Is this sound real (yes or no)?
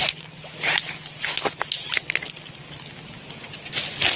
yes